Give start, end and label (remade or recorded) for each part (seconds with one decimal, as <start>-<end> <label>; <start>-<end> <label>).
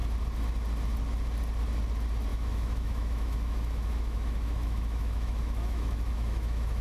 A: 0.0-2.3 recorded; 2.3-6.8 remade